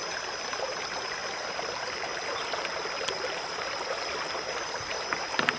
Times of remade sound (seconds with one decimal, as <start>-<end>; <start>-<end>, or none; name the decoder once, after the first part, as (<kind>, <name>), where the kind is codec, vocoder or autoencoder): none